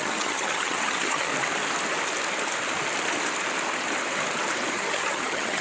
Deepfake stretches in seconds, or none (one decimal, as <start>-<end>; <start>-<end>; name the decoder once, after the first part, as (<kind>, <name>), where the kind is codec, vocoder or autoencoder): 0.0-1.3 (vocoder, HiFi-GAN); 4.7-5.6